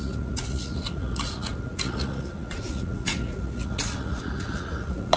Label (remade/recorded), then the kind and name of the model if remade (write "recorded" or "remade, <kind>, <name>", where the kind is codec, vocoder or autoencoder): remade, vocoder, Vocos